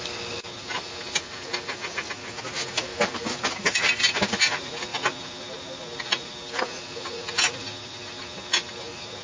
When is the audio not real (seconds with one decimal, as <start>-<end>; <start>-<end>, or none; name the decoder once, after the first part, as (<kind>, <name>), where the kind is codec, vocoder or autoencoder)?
none